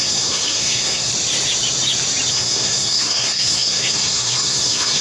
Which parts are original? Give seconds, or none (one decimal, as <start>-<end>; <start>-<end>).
1.1-2.3